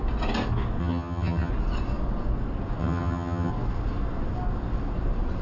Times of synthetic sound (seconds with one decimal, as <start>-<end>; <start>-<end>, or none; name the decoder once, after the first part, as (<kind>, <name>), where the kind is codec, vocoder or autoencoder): 0.8-1.5 (vocoder, HiFi-GAN); 2.8-3.5